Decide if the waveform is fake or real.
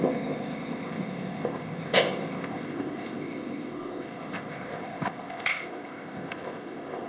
fake